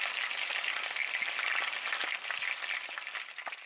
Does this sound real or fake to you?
real